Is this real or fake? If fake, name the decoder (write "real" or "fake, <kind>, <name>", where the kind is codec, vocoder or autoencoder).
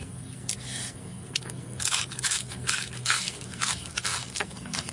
fake, codec, SNAC